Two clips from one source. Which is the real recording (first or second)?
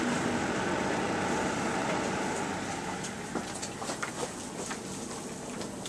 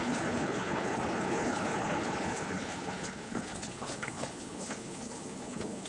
first